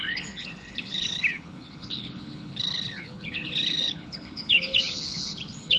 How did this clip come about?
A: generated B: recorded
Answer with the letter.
A